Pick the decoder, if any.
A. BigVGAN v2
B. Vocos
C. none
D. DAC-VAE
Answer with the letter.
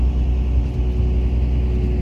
C